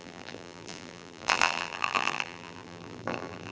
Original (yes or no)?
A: no